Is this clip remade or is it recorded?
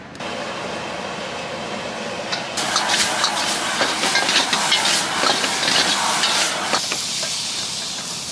recorded